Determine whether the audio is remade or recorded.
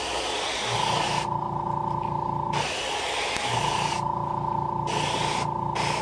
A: recorded